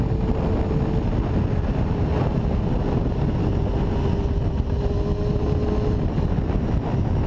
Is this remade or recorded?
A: recorded